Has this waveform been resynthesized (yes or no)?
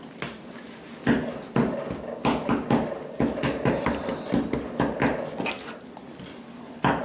no